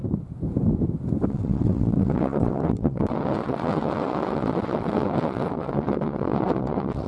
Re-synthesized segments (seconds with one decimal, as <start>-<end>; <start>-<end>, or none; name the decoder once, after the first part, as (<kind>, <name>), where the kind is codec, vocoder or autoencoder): 1.3-7.1 (vocoder, WaveNeXt)